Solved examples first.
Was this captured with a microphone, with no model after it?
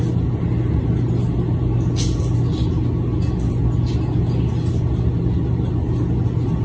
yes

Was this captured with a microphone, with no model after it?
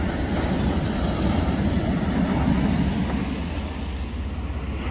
yes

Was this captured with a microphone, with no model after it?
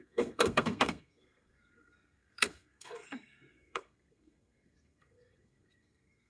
no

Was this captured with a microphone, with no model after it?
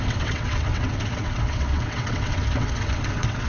no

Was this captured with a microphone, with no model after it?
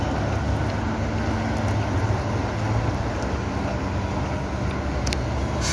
yes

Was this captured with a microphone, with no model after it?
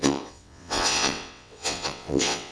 no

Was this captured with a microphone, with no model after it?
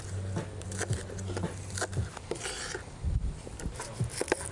yes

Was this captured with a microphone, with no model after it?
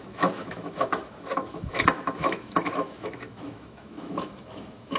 no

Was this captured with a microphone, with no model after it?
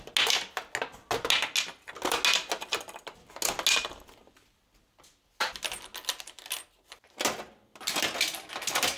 yes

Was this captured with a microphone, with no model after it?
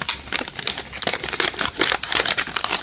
yes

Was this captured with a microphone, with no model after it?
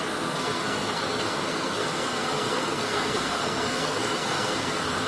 no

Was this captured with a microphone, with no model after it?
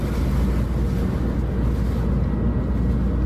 yes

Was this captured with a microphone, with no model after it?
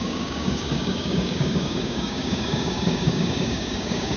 no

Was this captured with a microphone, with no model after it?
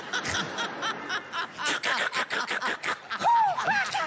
yes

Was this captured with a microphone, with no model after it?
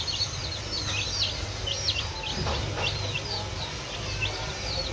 yes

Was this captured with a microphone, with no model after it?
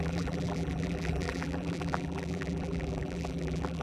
no